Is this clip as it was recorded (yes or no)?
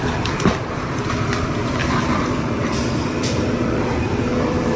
no